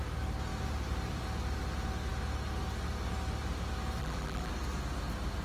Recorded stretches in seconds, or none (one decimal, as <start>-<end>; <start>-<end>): 0.0-4.0; 4.5-5.4